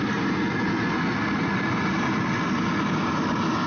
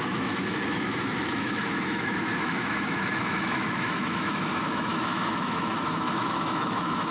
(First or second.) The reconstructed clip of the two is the second